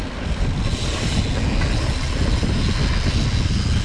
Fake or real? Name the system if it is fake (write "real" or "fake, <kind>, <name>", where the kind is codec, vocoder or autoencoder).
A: real